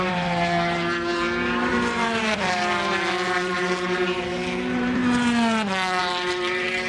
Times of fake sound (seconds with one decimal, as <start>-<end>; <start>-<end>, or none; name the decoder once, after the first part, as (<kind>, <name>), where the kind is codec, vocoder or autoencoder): 0.0-5.0 (vocoder, BigVGAN v2); 6.0-6.9